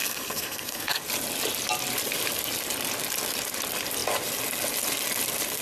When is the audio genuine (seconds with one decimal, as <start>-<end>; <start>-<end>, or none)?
1.0-5.6